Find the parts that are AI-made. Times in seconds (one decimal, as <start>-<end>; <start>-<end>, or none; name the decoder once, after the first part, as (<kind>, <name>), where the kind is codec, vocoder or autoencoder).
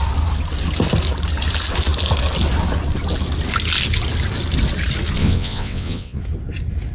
5.2-6.2 (vocoder, WaveNeXt)